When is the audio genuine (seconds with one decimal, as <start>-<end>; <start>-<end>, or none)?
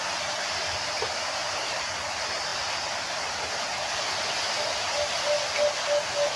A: 0.0-1.4; 1.9-6.4